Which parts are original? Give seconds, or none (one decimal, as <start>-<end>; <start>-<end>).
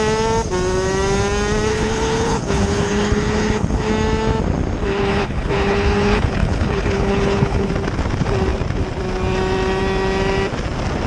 0.0-1.7; 3.9-4.8; 7.7-11.1